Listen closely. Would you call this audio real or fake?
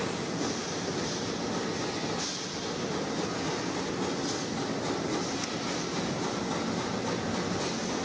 real